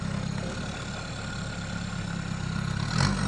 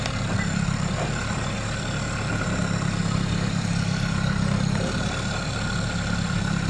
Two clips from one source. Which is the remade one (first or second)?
second